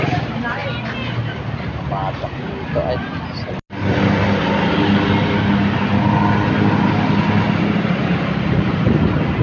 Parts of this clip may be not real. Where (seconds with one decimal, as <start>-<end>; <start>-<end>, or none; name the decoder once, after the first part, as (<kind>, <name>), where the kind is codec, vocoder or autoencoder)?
none